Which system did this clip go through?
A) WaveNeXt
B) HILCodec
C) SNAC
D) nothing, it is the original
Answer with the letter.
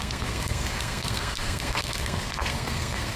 C